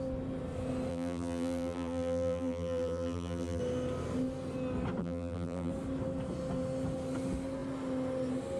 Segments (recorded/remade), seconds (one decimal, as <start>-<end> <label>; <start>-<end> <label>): 0.0-0.9 recorded; 0.9-3.6 remade; 3.6-5.0 recorded; 5.0-5.7 remade; 5.7-8.6 recorded